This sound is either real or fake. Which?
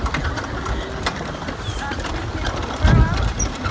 real